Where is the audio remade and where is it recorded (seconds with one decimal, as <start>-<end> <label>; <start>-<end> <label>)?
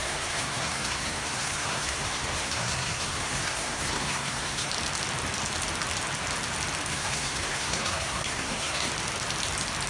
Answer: 0.0-4.7 remade; 4.7-6.9 recorded; 6.9-8.9 remade; 8.9-9.9 recorded